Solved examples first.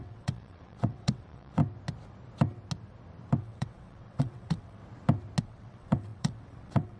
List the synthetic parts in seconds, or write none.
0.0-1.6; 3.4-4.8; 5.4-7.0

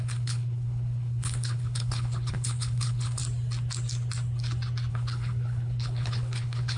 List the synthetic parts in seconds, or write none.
0.0-3.2; 4.9-6.8

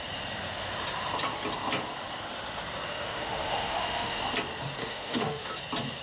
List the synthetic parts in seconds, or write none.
2.9-4.2; 4.8-5.5

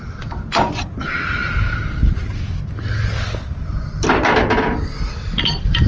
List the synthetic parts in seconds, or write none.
none